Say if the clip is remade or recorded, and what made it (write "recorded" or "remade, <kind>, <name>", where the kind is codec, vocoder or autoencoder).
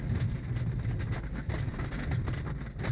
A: recorded